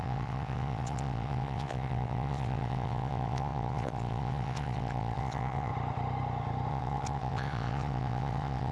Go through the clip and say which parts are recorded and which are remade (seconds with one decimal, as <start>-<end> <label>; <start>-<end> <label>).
0.0-5.7 remade; 5.7-6.7 recorded; 6.7-8.7 remade